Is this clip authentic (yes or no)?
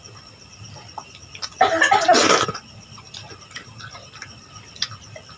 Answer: no